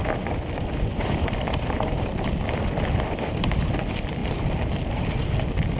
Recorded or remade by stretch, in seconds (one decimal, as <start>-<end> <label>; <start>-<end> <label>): 0.0-3.5 remade; 3.5-4.2 recorded; 4.2-4.9 remade; 4.9-5.8 recorded